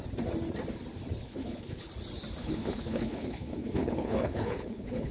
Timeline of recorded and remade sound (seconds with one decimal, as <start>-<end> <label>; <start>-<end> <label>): 0.0-1.2 recorded; 1.2-1.9 remade; 1.9-2.4 recorded; 2.4-5.1 remade